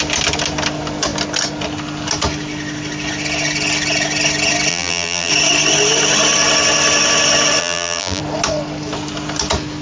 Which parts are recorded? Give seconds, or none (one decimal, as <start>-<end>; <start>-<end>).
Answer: 0.0-4.7; 5.3-7.6; 8.2-9.8